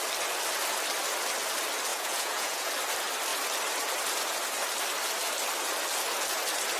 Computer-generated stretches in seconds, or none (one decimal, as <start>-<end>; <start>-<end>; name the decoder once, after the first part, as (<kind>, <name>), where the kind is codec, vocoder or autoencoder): 1.9-2.7 (vocoder, Vocos)